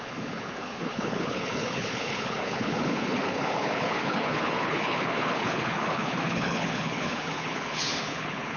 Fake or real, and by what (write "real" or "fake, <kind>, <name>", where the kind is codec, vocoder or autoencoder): fake, codec, HILCodec